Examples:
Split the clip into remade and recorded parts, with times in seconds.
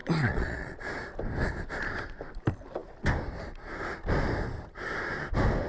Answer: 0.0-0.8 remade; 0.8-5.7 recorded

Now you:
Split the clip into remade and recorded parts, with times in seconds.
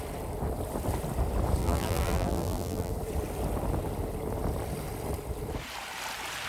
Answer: 0.0-1.6 recorded; 1.6-2.9 remade; 2.9-6.5 recorded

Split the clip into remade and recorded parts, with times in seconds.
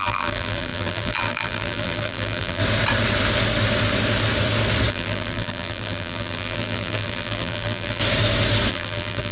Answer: 0.0-2.6 remade; 2.6-4.9 recorded; 4.9-8.0 remade; 8.0-8.7 recorded; 8.7-9.3 remade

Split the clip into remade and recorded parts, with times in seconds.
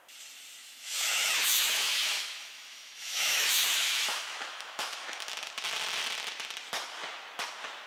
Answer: 0.0-0.6 recorded; 0.6-5.3 remade; 5.3-7.9 recorded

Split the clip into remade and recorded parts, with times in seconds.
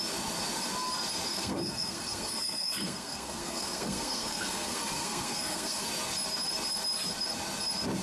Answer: 0.0-1.3 recorded; 1.3-5.9 remade; 5.9-8.0 recorded